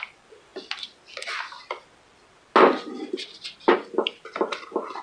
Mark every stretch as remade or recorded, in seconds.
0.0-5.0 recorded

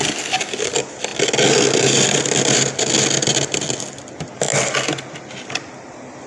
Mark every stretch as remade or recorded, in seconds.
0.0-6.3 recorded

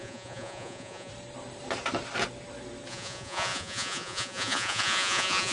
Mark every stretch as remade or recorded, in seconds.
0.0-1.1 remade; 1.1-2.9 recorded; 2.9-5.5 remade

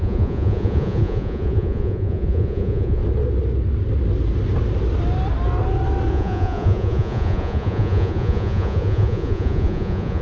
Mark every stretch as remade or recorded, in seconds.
0.0-3.0 remade; 3.0-6.1 recorded; 6.1-10.2 remade

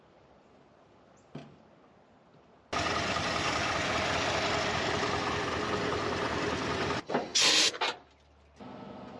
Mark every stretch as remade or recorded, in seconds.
0.0-9.2 recorded

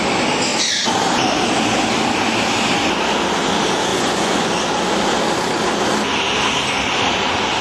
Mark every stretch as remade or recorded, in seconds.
0.0-3.9 recorded; 3.9-4.6 remade; 4.6-7.6 recorded

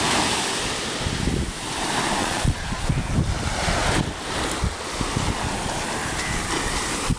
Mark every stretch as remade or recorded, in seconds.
0.0-2.2 recorded; 2.2-2.8 remade; 2.8-7.2 recorded